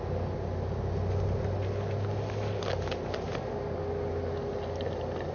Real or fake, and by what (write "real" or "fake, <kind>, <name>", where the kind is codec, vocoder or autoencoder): real